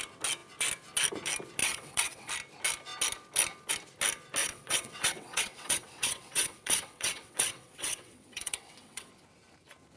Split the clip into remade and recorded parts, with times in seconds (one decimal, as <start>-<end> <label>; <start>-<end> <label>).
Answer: 0.0-1.6 recorded; 1.6-2.3 remade; 2.3-4.4 recorded; 4.4-9.1 remade; 9.1-10.0 recorded